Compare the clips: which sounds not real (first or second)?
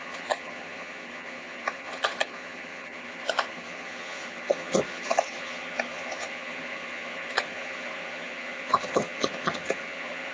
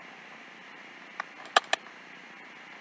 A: first